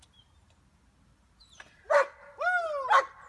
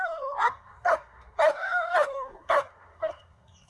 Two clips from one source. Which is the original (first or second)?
first